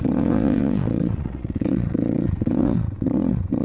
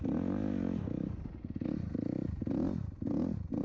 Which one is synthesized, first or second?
first